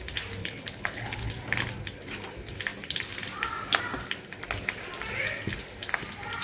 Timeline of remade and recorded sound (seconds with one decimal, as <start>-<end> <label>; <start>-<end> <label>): 0.0-0.4 recorded; 0.4-1.3 remade; 1.3-6.4 recorded